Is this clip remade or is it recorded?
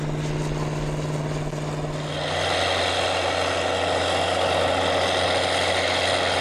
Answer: recorded